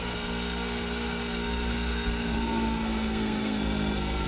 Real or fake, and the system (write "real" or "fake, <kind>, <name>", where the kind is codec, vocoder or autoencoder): fake, codec, SNAC